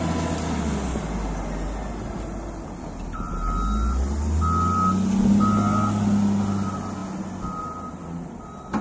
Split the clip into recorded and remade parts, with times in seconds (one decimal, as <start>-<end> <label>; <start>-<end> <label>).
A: 0.0-8.8 recorded